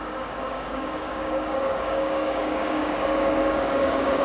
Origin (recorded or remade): remade